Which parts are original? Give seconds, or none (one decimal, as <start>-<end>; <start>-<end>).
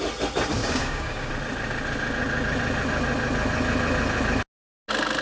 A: 0.0-0.6; 1.3-5.2